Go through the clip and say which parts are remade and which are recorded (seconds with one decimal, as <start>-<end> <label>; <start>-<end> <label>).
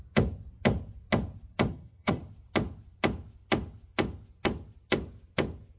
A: 0.0-1.7 recorded; 1.7-2.2 remade; 2.2-5.8 recorded